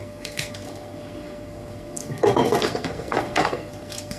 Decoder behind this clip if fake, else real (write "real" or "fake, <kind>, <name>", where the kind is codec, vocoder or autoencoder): fake, codec, SNAC